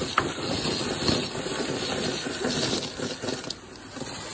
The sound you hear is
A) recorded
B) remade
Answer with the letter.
A